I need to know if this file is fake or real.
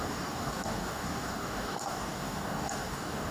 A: fake